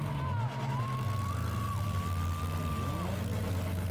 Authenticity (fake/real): real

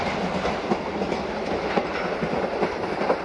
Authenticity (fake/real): real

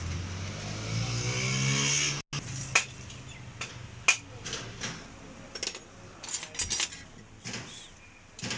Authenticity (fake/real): real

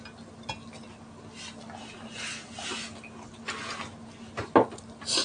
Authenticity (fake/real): real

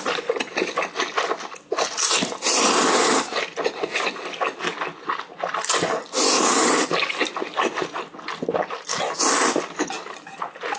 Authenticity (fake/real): real